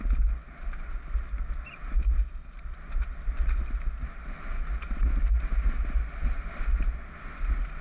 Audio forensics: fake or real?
real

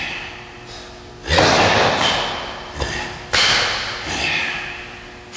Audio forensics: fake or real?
real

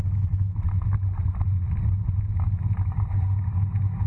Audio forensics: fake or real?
real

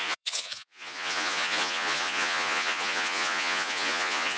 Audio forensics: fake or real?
fake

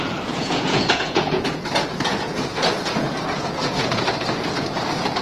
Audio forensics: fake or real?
fake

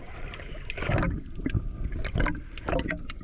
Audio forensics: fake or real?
real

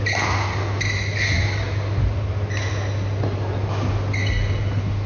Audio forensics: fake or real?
real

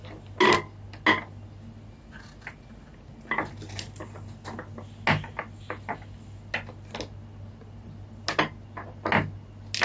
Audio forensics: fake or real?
real